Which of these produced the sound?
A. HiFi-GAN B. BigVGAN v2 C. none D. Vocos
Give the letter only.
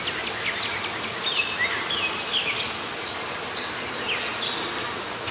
C